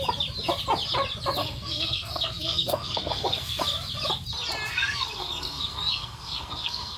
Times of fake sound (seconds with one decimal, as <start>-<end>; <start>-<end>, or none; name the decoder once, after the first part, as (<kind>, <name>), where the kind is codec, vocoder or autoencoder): 1.4-3.6 (codec, SNAC); 4.7-7.0